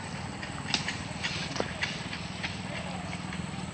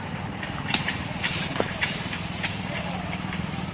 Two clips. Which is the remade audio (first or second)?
second